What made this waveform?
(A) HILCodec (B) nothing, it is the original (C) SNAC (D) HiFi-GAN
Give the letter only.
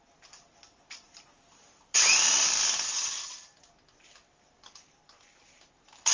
B